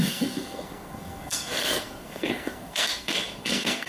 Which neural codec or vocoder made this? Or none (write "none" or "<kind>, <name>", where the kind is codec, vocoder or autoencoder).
codec, SNAC